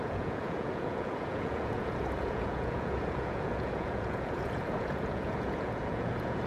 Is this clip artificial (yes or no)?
yes